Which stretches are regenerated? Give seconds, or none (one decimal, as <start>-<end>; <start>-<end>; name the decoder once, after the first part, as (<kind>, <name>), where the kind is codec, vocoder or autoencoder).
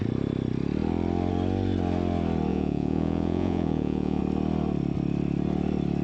2.5-4.2 (vocoder, Vocos)